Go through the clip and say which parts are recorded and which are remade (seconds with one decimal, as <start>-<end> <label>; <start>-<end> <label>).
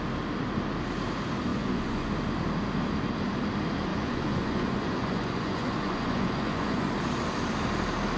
0.0-1.5 recorded; 1.5-2.1 remade; 2.1-3.9 recorded; 3.9-6.9 remade; 6.9-8.2 recorded